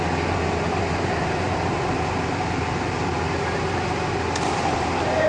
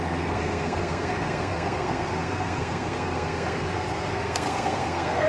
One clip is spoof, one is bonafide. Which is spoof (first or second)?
second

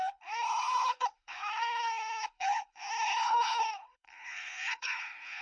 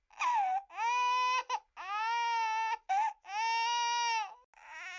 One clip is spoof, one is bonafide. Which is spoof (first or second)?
first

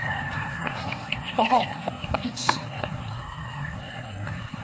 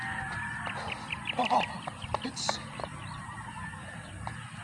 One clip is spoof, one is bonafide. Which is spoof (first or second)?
first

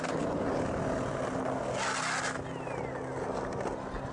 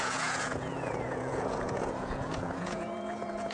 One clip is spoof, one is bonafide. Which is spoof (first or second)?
second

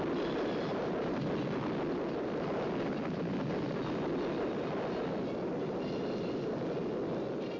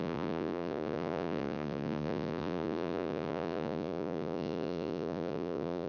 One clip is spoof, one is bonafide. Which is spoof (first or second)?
second